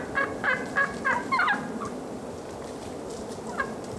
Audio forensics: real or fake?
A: real